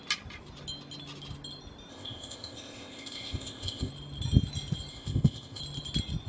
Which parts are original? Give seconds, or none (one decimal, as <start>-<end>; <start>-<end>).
0.0-1.9; 3.9-4.9; 5.6-6.3